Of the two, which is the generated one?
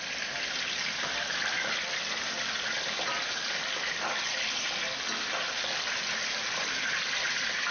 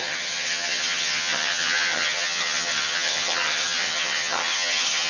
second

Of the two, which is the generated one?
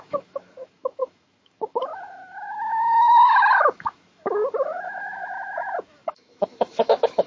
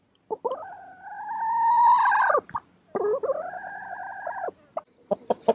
first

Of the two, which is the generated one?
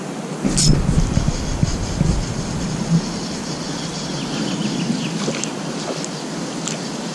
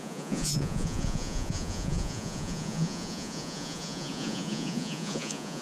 second